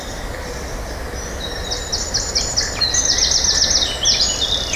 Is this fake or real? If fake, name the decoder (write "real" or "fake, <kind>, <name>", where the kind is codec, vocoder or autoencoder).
real